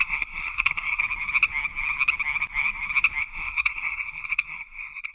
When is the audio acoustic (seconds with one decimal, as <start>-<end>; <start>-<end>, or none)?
1.0-3.2